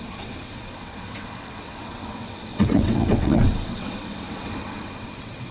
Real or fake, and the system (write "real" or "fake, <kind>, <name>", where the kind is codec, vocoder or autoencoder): fake, vocoder, WaveNeXt